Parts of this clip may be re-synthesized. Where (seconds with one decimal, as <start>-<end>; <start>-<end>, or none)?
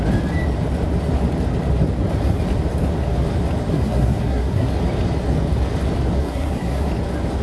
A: 3.7-4.7; 6.2-6.9